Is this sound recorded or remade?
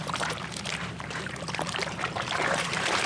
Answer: remade